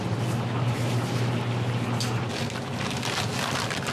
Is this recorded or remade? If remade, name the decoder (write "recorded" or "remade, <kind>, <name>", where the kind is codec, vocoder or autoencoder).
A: recorded